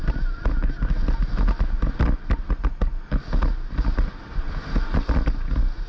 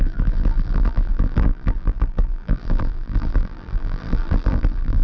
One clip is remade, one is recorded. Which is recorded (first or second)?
first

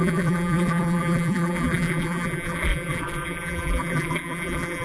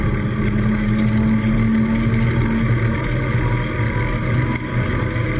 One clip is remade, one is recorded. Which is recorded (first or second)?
second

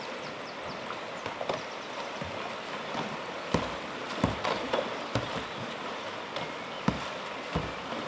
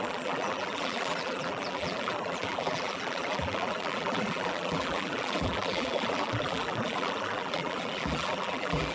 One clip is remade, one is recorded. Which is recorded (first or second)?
first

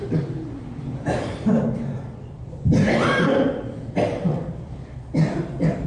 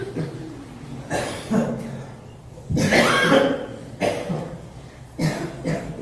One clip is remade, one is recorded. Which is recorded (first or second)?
second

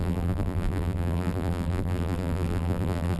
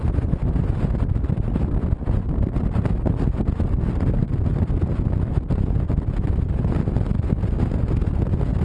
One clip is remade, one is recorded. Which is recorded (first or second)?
second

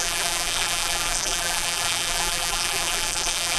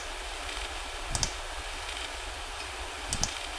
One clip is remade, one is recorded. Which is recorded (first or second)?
second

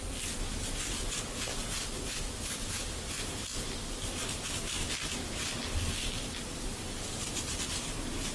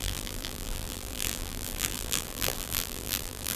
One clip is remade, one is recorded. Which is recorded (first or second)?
first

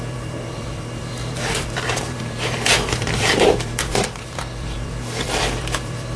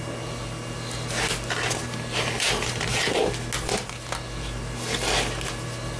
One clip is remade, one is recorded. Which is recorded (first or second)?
second